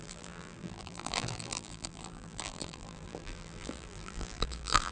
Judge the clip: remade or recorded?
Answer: remade